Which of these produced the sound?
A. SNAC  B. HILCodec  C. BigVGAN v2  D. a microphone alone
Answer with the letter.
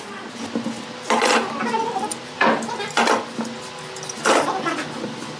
D